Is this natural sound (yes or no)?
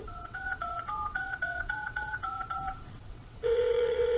no